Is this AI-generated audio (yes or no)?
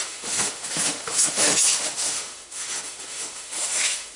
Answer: yes